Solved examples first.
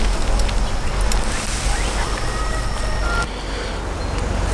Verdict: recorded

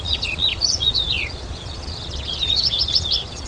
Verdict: remade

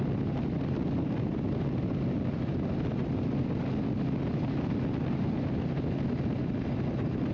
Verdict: recorded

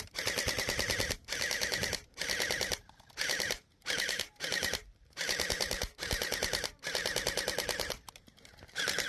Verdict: remade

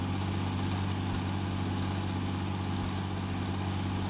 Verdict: recorded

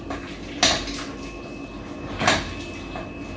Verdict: recorded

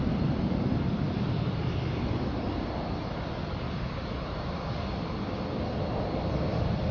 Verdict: recorded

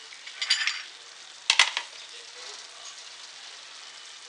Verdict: recorded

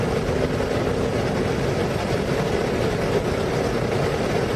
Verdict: recorded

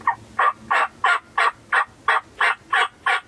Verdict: recorded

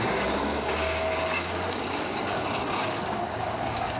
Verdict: remade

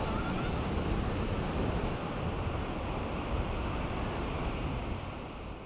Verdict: recorded